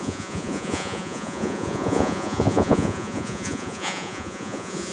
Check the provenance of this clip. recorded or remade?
remade